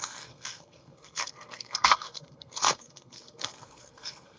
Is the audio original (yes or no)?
no